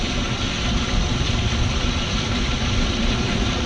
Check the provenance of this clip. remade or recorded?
remade